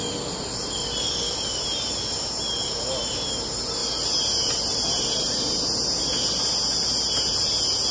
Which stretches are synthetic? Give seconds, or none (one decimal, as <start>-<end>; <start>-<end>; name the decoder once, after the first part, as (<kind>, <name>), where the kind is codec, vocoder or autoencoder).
0.8-1.6 (vocoder, BigVGAN v2)